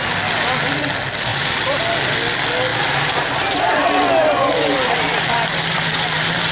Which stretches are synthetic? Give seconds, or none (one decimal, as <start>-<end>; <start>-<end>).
1.3-1.8; 2.7-3.6; 4.2-6.5